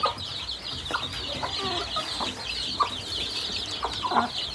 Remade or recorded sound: recorded